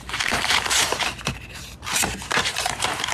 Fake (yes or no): yes